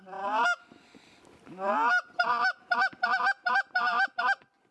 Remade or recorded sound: recorded